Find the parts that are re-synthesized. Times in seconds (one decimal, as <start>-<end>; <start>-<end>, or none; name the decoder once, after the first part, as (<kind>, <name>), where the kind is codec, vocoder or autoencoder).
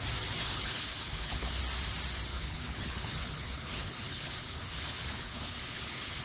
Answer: 0.4-1.6 (codec, HILCodec); 2.3-6.2